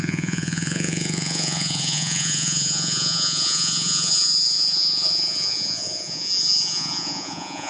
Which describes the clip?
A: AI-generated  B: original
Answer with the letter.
A